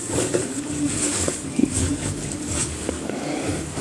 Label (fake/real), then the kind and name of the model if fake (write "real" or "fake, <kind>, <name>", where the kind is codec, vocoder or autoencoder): fake, codec, DAC